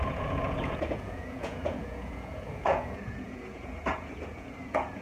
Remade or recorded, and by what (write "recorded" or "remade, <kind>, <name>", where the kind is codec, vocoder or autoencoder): remade, vocoder, Vocos